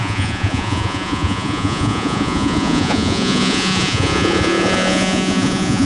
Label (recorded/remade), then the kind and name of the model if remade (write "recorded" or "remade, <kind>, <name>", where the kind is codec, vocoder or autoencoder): remade, vocoder, Vocos